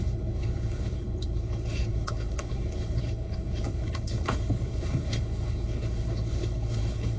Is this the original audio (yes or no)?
no